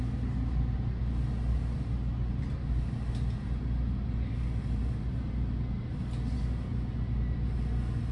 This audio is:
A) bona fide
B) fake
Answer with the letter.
A